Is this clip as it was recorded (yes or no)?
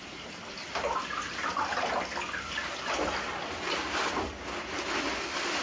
yes